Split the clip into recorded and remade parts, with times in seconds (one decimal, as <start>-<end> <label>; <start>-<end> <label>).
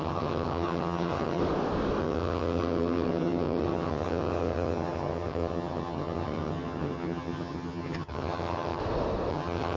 0.0-1.4 remade; 1.4-2.0 recorded; 2.0-8.8 remade; 8.8-9.3 recorded; 9.3-9.8 remade